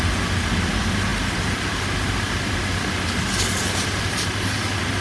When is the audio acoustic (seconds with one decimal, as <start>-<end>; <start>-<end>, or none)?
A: 0.0-5.0